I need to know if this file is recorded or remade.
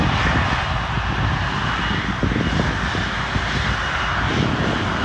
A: recorded